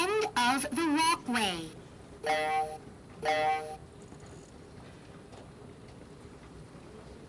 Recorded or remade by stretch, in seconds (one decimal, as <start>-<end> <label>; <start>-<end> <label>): 0.0-7.3 recorded